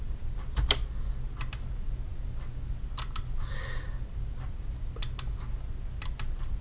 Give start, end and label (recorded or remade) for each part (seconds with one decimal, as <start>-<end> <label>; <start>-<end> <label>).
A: 0.0-6.6 recorded